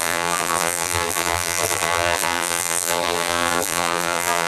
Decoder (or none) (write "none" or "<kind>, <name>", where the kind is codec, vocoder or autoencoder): vocoder, BigVGAN v2